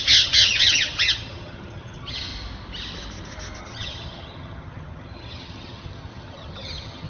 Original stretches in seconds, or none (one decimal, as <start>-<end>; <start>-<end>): 2.3-3.6